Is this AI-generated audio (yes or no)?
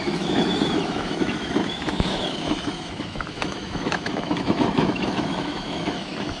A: yes